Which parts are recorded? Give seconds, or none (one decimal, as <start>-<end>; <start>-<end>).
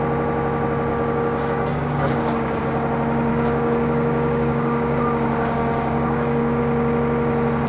0.0-0.9; 2.6-3.3; 5.0-5.6; 6.6-7.7